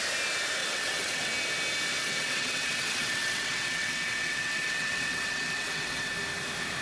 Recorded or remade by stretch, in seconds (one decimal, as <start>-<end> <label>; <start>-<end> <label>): 0.0-0.6 recorded; 0.6-1.3 remade; 1.3-2.0 recorded; 2.0-6.1 remade; 6.1-6.8 recorded